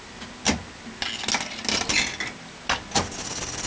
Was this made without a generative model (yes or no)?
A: yes